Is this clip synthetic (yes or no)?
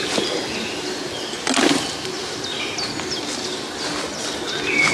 no